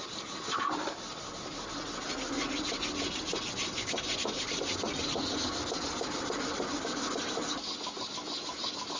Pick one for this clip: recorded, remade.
recorded